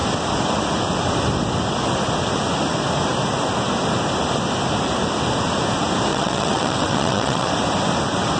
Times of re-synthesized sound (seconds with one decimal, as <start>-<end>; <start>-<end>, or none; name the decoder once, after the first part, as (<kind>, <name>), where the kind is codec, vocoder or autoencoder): 6.1-7.5 (vocoder, WaveNeXt)